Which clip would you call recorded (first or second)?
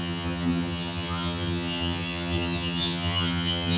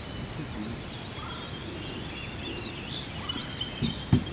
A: second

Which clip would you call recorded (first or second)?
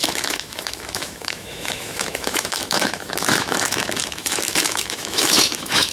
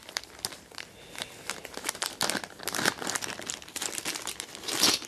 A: second